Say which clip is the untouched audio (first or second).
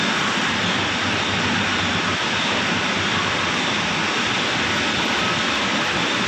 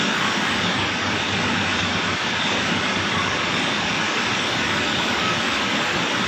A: first